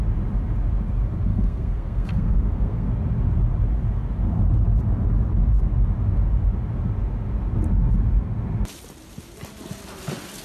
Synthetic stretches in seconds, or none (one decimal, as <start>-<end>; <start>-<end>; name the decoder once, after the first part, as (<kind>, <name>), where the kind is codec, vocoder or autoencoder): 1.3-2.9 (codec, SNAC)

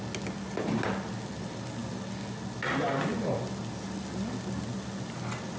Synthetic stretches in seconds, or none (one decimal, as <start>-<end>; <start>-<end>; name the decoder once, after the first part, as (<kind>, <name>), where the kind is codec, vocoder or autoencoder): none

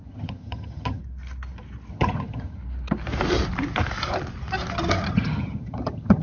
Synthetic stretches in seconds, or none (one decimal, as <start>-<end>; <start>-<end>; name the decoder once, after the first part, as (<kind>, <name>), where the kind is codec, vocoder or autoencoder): 0.0-1.0 (vocoder, HiFi-GAN); 1.9-2.6; 5.1-6.2

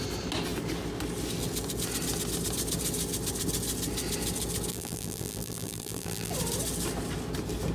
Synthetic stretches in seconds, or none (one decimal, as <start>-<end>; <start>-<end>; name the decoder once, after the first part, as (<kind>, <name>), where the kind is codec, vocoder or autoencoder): 4.7-6.3 (vocoder, BigVGAN v2)

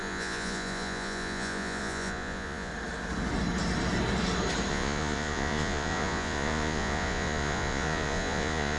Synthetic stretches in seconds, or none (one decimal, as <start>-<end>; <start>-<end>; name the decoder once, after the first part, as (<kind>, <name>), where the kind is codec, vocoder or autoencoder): 0.0-2.7 (vocoder, Vocos); 4.7-8.8